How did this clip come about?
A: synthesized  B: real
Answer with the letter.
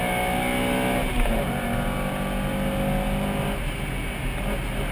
B